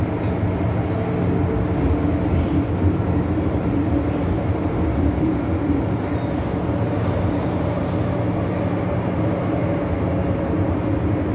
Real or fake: real